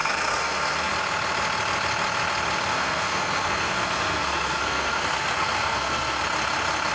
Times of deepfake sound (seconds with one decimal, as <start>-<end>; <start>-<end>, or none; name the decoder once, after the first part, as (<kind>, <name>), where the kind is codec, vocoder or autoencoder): 0.0-0.9 (codec, SNAC); 2.7-6.2